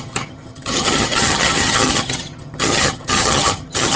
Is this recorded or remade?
remade